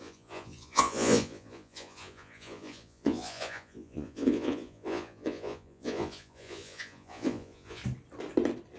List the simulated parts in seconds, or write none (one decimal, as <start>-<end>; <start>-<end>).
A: 0.0-7.8